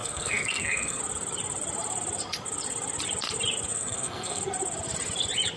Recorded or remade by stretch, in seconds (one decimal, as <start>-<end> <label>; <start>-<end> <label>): 0.0-1.0 remade; 1.0-3.7 recorded; 3.7-4.4 remade; 4.4-5.6 recorded